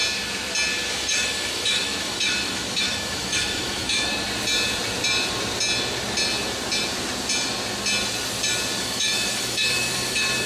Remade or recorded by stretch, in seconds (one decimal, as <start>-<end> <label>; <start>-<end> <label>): 0.0-0.9 recorded; 0.9-4.1 remade; 4.1-8.8 recorded; 8.8-10.5 remade